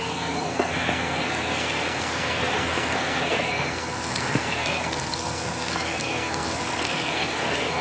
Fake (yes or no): yes